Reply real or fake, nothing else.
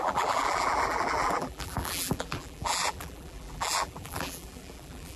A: fake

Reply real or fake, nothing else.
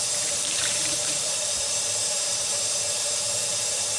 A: fake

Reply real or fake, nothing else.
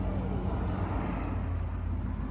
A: real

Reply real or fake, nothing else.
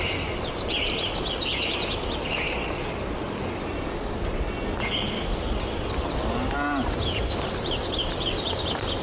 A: real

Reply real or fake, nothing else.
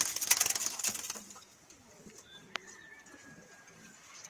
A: fake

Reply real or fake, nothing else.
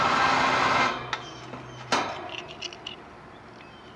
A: real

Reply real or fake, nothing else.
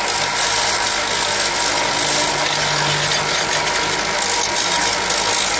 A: real